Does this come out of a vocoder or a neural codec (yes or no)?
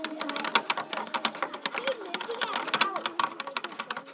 no